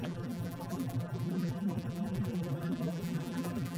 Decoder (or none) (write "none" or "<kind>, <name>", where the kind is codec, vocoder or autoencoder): vocoder, BigVGAN v2